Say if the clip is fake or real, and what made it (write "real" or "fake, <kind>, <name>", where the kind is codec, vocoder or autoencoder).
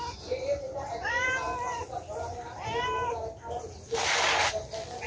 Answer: real